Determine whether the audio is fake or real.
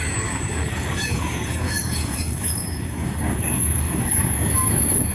fake